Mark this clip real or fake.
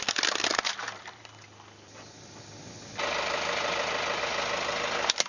real